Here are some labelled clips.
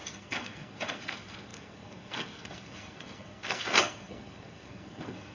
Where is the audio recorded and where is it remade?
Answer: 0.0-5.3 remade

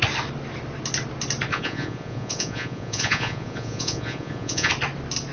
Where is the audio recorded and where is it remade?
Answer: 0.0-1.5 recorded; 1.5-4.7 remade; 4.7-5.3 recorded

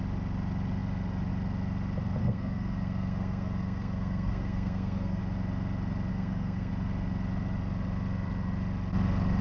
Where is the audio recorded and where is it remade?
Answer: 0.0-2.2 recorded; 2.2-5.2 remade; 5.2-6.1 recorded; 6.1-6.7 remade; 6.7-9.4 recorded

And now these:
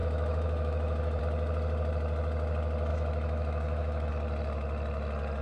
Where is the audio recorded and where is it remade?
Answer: 0.0-1.2 remade; 1.2-2.9 recorded; 2.9-4.1 remade; 4.1-5.4 recorded

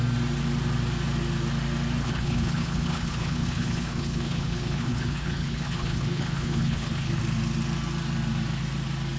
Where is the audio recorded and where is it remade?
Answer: 0.0-2.0 recorded; 2.0-7.2 remade; 7.2-9.2 recorded

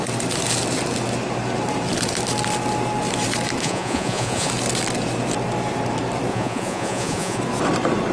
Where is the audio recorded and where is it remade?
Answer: 0.0-3.6 recorded; 3.6-4.5 remade; 4.5-6.3 recorded; 6.3-7.4 remade; 7.4-8.1 recorded

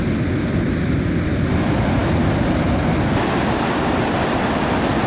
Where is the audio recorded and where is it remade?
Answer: 0.0-5.1 recorded